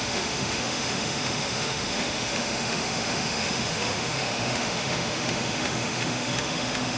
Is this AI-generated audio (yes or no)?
yes